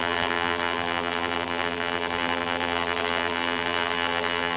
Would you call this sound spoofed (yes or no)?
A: yes